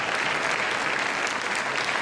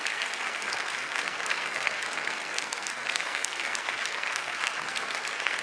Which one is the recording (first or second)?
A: first